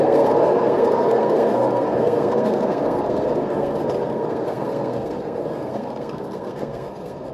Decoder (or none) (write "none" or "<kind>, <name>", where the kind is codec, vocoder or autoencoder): codec, SNAC